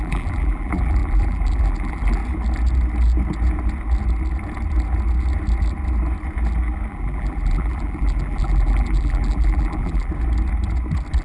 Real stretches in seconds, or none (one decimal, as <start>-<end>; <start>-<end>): 2.2-6.9; 10.1-11.2